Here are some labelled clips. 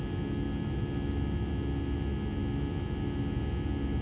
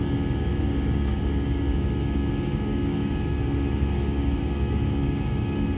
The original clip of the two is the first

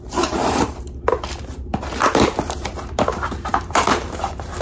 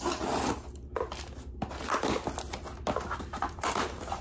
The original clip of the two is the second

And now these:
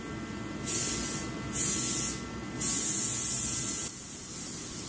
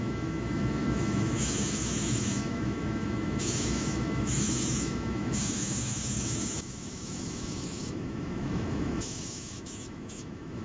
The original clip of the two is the first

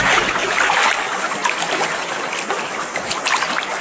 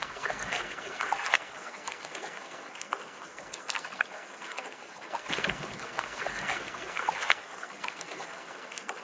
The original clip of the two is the first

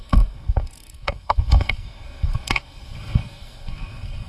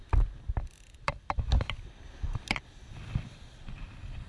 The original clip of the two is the second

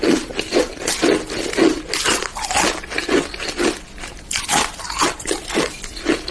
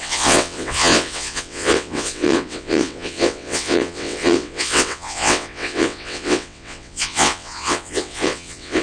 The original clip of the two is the first